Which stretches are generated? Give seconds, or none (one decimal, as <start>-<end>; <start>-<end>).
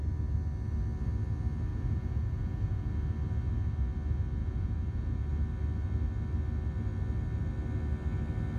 1.7-2.9; 4.4-5.3